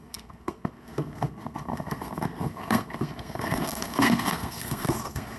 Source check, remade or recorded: remade